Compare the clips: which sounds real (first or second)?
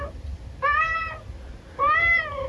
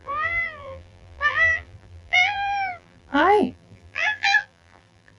first